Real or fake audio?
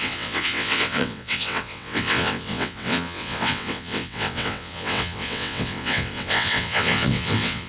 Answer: fake